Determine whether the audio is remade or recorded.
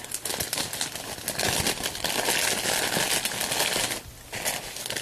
recorded